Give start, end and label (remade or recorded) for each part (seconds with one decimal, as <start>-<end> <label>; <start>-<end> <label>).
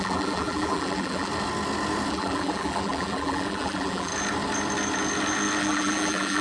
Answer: 0.0-1.3 remade; 1.3-2.1 recorded; 2.1-4.1 remade; 4.1-5.6 recorded; 5.6-6.4 remade